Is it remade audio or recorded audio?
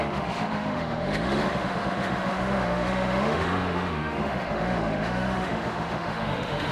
remade